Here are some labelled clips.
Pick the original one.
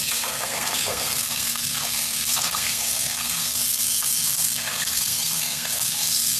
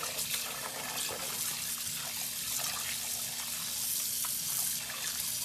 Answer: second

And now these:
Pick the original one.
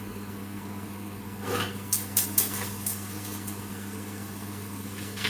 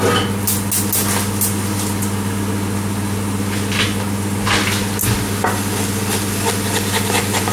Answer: second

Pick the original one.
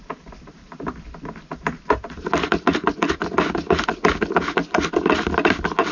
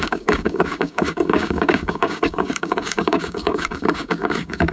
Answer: first